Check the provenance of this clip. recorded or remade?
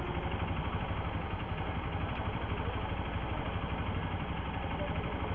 recorded